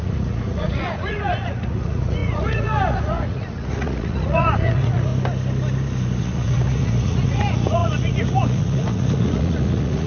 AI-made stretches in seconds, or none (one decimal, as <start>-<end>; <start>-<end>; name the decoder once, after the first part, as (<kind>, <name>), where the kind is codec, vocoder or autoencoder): 0.0-5.1 (vocoder, Vocos); 6.2-10.1